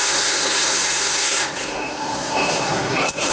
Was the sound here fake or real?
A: fake